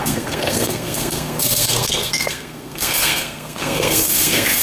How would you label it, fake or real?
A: fake